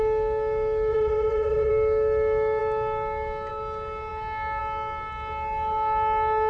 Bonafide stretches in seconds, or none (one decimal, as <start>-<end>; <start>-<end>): 0.0-0.9; 1.7-6.5